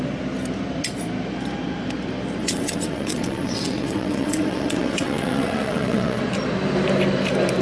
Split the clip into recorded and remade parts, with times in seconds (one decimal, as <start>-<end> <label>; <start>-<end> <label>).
0.0-2.4 recorded; 2.4-6.2 remade; 6.2-7.6 recorded

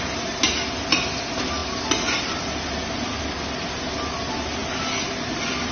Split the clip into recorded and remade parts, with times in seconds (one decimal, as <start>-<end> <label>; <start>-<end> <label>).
0.0-5.7 recorded

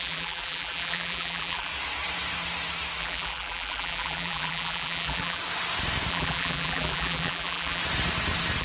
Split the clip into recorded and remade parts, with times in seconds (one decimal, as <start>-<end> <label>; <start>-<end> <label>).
0.0-1.7 remade; 1.7-3.0 recorded; 3.0-5.4 remade; 5.4-6.1 recorded; 6.1-7.8 remade; 7.8-8.6 recorded

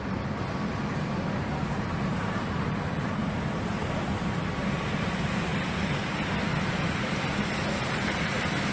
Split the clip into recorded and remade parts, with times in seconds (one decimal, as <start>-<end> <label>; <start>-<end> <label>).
0.0-3.2 recorded; 3.2-3.7 remade; 3.7-8.7 recorded